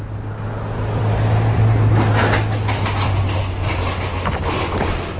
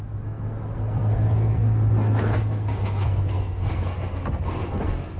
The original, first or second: first